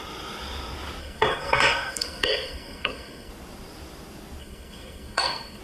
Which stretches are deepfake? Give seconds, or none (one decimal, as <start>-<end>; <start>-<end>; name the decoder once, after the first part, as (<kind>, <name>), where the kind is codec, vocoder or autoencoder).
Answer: 1.0-3.3 (codec, SNAC); 4.4-5.6